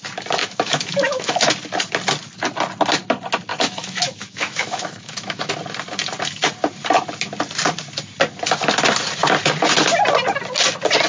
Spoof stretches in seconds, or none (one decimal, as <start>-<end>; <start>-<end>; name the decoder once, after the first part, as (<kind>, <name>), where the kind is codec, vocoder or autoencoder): 0.4-1.5 (autoencoder, DAC-VAE); 3.5-5.5